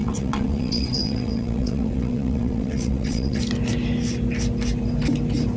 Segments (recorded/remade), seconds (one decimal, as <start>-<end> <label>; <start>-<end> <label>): 0.0-3.4 remade; 3.4-5.6 recorded